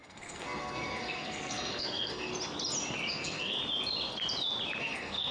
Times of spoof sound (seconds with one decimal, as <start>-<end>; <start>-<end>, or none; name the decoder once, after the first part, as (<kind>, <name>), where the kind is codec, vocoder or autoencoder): 0.0-2.3 (codec, SNAC); 3.1-3.6; 4.8-5.3